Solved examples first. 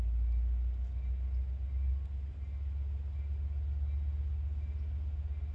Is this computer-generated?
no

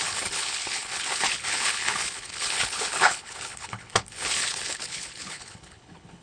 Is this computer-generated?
yes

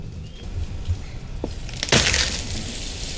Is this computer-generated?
no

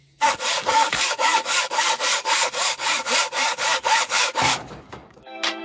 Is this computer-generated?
yes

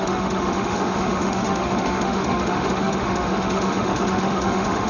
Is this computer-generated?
yes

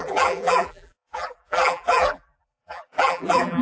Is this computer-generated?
yes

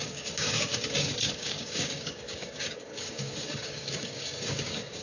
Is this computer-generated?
yes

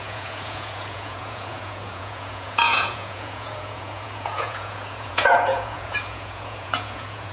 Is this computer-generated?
yes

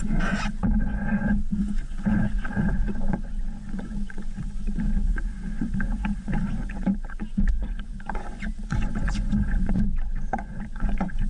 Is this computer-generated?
yes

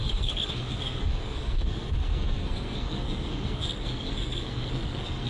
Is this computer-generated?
yes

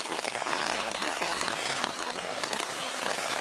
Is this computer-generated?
yes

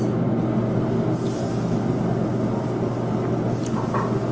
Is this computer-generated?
no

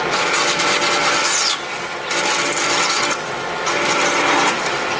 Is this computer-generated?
no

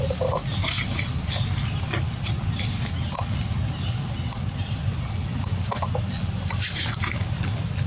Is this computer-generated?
no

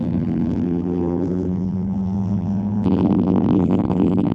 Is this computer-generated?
yes